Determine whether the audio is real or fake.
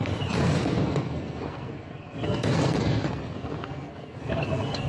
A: fake